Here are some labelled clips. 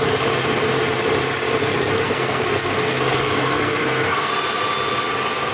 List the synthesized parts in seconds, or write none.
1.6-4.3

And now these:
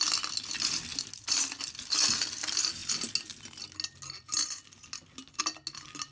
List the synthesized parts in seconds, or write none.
none

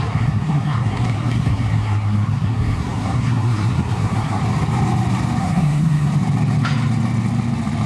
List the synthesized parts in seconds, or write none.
0.0-4.4; 5.4-6.1

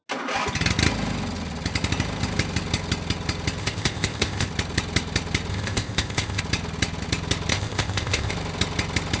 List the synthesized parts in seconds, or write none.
3.6-4.5; 5.5-6.4; 7.5-8.3

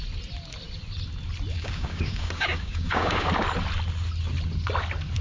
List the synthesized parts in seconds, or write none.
1.5-3.3

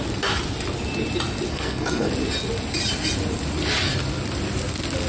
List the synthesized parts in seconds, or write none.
1.5-2.1

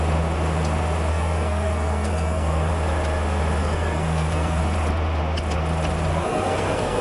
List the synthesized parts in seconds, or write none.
1.1-2.7; 3.6-4.6; 6.1-7.0

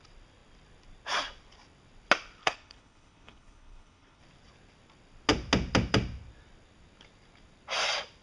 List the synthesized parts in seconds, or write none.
2.4-4.2